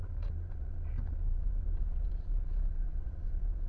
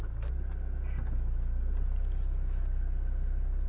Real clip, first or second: second